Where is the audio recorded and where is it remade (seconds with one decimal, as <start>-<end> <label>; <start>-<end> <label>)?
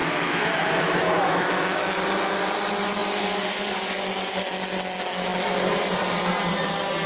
0.0-1.8 remade; 1.8-7.1 recorded